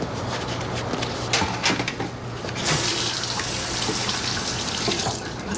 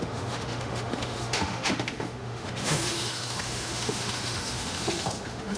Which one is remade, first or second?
second